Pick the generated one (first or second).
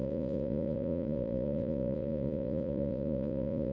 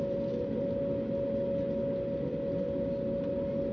first